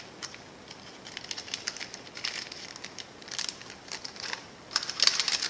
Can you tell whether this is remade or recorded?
recorded